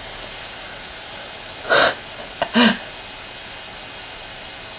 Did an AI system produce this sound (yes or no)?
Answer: no